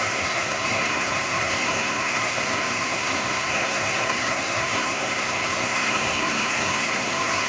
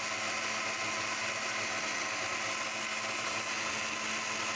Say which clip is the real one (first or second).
second